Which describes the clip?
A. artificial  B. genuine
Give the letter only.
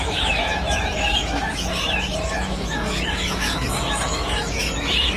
A